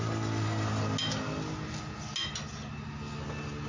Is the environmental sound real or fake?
real